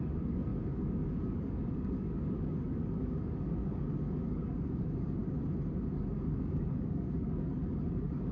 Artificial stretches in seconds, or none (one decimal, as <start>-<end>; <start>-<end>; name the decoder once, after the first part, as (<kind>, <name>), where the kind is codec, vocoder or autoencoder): 0.0-5.2 (codec, DAC); 5.9-8.3